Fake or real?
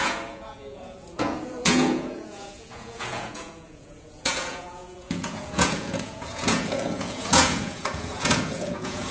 fake